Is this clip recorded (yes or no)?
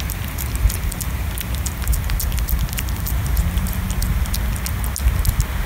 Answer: yes